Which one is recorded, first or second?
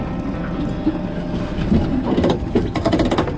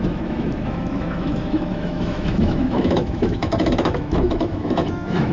first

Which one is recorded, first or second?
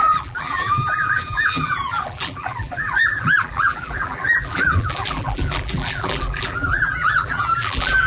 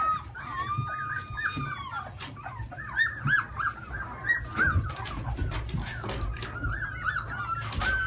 second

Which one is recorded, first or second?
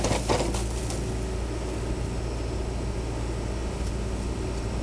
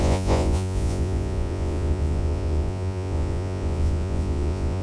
first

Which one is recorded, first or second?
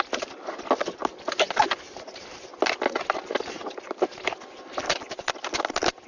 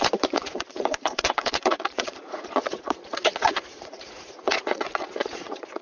first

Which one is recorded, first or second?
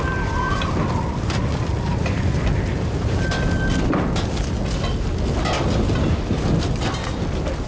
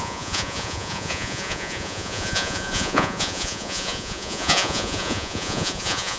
first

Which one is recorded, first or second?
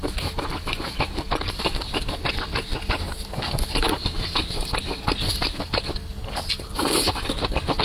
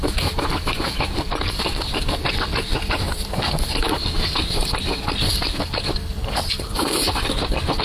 first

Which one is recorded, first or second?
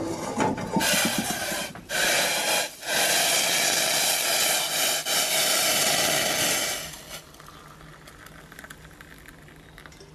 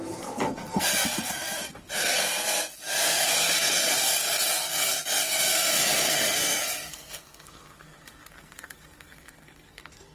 first